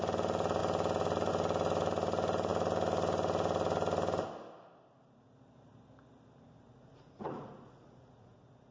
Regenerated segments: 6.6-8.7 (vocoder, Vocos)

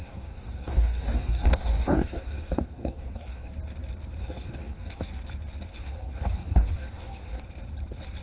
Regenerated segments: 0.0-3.5 (codec, DAC); 4.2-5.0; 5.7-7.4

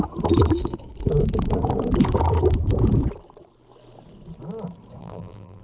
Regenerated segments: 5.0-5.6 (vocoder, BigVGAN v2)

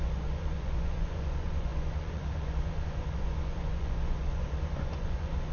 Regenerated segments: 0.0-5.5 (vocoder, Vocos)

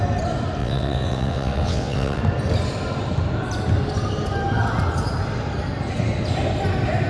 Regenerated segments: 0.6-2.2 (vocoder, WaveNeXt)

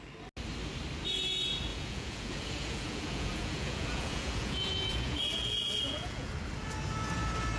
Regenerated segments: 1.7-6.3 (vocoder, Vocos)